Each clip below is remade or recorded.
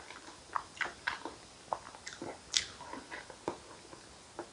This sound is recorded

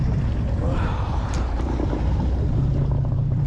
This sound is remade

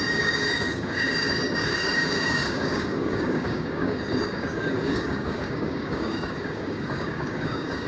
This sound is remade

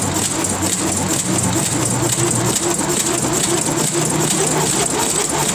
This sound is recorded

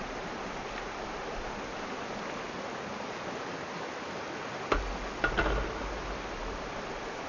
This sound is recorded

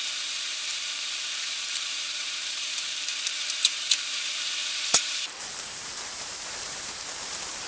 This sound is remade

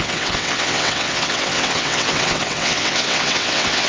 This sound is remade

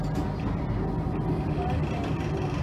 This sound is recorded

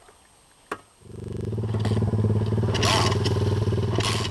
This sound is recorded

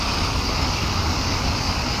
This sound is remade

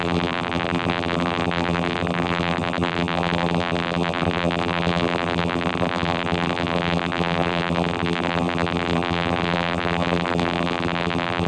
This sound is remade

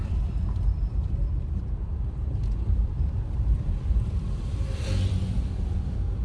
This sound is remade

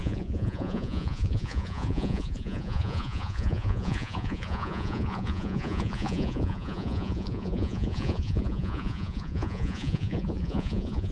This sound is remade